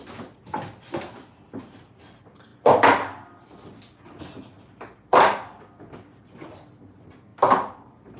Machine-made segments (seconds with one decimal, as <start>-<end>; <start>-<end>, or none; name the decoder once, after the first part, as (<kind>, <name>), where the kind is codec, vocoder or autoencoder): none